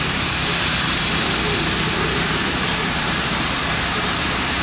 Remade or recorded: remade